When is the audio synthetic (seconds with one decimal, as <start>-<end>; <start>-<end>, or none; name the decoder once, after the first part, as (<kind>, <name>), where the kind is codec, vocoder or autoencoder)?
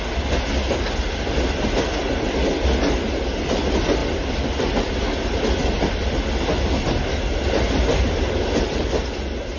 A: none